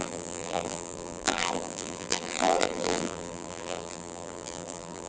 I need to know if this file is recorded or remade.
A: remade